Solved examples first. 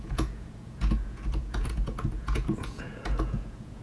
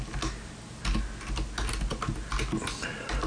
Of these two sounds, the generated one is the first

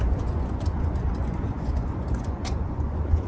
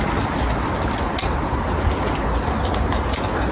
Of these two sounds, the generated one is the first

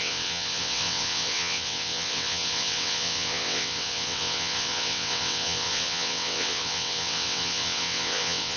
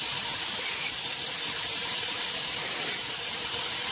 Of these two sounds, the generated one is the first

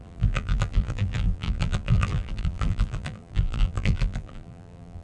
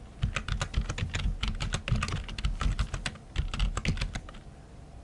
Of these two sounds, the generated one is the first